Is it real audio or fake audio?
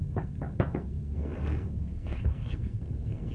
fake